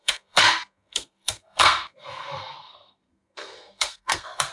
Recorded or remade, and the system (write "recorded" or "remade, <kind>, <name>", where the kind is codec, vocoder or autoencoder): remade, codec, SNAC